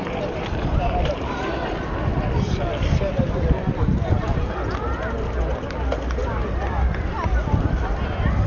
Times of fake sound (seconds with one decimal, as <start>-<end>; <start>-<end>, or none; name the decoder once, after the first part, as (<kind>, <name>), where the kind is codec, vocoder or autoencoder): none